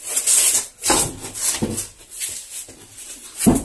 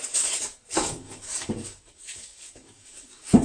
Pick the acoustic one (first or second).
first